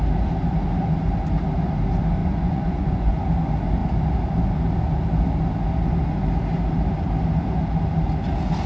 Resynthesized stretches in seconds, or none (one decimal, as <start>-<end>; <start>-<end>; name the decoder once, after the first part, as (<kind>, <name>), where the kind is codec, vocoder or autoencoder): 2.2-3.2 (vocoder, Vocos)